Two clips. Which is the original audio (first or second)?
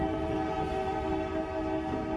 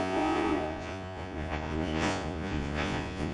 first